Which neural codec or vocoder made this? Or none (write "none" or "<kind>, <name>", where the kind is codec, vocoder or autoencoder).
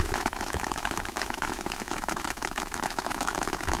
autoencoder, DAC-VAE